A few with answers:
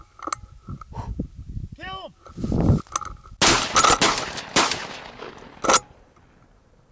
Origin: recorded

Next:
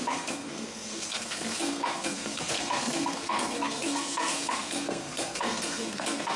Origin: remade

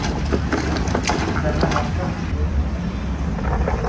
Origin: recorded